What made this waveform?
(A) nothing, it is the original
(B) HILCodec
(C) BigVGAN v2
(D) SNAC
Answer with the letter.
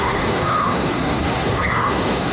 D